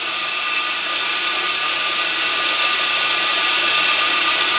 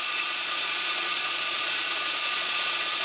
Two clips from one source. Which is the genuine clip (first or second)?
first